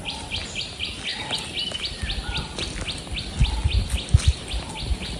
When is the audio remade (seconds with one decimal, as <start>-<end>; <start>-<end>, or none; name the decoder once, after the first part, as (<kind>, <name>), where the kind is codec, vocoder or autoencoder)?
none